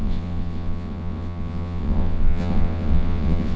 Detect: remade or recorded remade